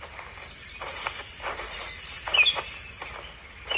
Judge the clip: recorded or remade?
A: recorded